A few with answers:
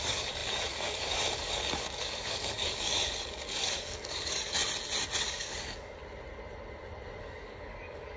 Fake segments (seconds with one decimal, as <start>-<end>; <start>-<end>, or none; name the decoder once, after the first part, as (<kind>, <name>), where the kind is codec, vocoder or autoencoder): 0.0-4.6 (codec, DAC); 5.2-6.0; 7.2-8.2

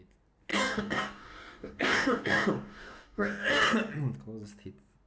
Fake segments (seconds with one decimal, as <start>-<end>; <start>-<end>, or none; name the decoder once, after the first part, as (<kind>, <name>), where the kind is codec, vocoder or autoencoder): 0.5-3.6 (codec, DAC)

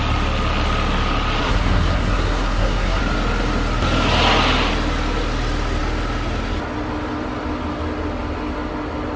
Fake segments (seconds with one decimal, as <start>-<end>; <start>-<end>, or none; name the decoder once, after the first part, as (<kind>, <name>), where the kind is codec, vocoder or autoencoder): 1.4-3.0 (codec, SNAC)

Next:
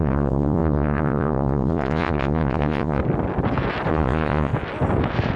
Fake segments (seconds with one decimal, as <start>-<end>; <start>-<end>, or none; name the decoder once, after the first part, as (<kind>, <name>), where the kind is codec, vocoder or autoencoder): 0.0-3.0 (vocoder, Vocos); 3.9-4.5

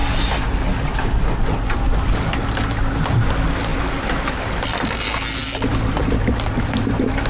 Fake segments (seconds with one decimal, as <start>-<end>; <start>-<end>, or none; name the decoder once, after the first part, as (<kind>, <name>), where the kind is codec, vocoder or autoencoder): 3.7-4.9 (vocoder, BigVGAN v2)